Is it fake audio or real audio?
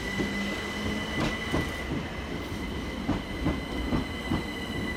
real